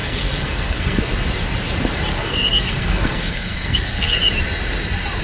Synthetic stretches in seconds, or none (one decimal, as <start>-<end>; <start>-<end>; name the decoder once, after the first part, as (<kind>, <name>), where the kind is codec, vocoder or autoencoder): 0.0-1.0 (codec, SNAC); 2.1-4.2